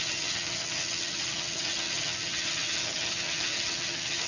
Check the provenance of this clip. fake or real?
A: fake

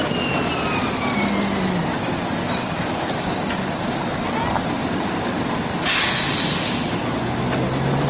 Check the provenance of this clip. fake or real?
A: real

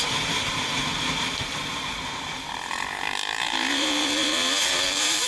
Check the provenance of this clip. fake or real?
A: fake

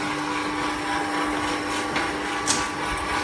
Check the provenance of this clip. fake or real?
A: real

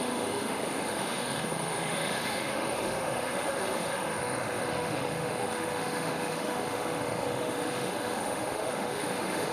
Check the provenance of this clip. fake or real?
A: fake